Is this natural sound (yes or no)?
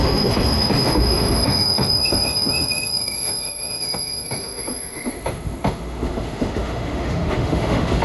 no